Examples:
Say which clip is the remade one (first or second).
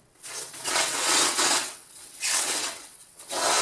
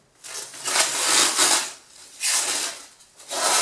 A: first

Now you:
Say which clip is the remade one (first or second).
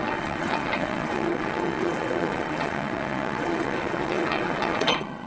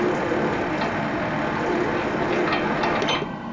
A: first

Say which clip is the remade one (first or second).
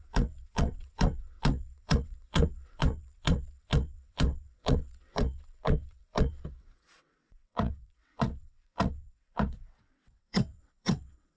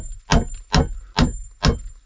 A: first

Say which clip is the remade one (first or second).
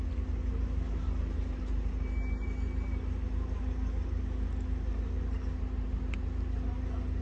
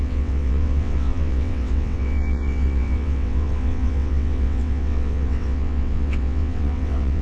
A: second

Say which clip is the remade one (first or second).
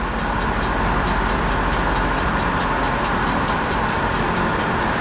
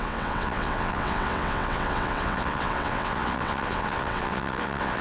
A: second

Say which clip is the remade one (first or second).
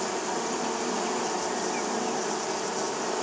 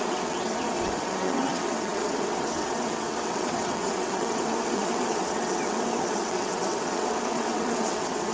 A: second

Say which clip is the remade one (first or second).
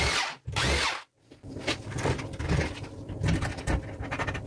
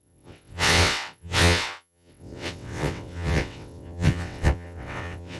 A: second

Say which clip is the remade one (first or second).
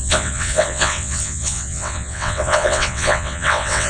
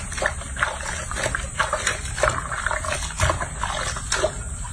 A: first